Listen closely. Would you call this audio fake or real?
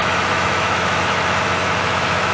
fake